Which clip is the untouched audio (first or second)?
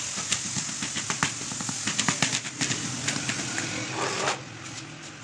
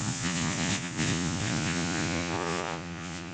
first